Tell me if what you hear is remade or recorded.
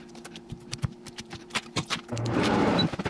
remade